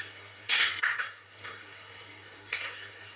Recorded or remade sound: remade